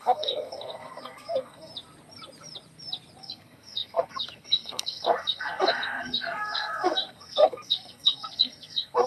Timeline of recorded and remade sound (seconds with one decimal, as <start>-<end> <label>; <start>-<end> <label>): 0.0-1.7 remade; 1.7-3.2 recorded; 3.2-9.1 remade